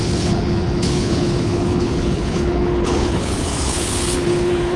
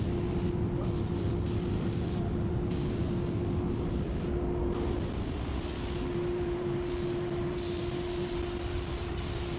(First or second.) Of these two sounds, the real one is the second